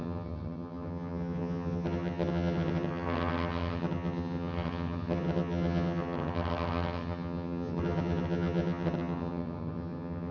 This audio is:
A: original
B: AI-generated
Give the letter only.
B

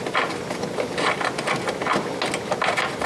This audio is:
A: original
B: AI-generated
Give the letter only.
A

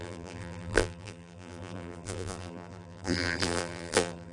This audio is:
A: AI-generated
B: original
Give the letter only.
A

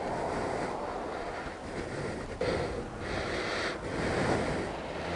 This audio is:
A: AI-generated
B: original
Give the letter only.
B